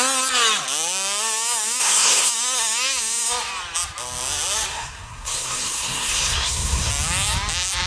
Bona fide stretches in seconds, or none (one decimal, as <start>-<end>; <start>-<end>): 0.0-1.8; 2.3-4.7; 6.9-7.9